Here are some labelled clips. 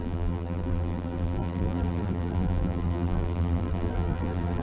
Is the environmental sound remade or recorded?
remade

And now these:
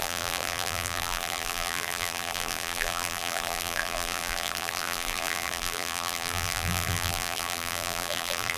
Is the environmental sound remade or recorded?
remade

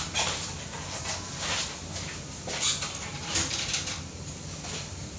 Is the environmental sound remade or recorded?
recorded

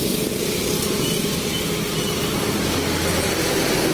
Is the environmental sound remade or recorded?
recorded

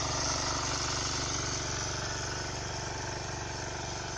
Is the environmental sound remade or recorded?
recorded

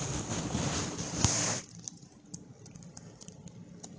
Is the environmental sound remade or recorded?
recorded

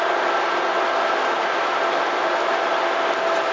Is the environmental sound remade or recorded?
recorded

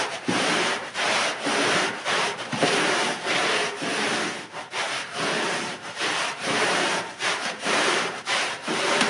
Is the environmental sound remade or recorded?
remade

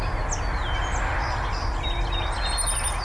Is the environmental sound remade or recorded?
recorded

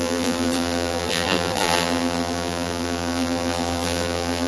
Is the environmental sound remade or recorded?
remade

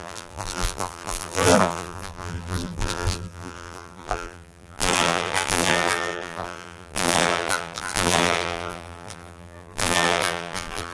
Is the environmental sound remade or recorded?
remade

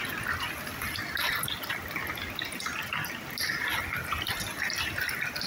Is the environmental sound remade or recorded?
recorded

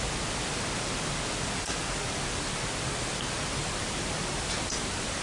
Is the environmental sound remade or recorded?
recorded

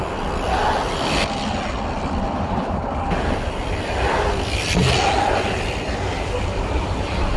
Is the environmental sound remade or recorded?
recorded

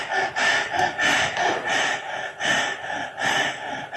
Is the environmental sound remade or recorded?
remade